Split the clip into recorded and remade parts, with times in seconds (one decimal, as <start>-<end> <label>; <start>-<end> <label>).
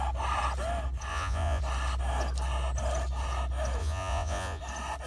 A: 0.0-1.1 recorded; 1.1-1.6 remade; 1.6-3.8 recorded; 3.8-4.6 remade; 4.6-5.1 recorded